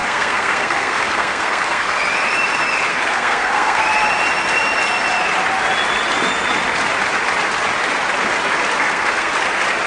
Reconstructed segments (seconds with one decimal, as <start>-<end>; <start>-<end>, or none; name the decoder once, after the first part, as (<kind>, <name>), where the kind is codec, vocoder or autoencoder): 0.0-2.0 (codec, SNAC); 2.9-3.8; 8.8-9.3